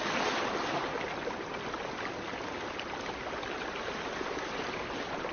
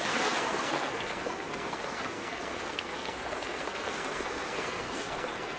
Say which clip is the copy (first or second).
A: second